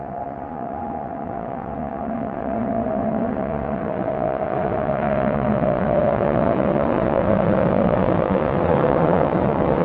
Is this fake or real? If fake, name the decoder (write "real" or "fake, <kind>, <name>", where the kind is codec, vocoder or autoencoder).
fake, vocoder, WaveNeXt